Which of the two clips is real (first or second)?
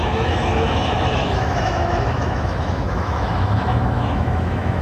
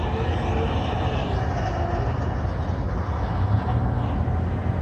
second